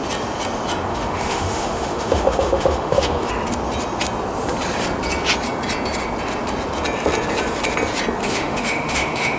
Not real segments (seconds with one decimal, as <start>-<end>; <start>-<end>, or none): 0.9-3.3; 8.2-9.4